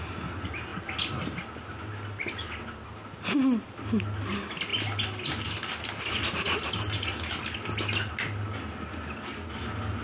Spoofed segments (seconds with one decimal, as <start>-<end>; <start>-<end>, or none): none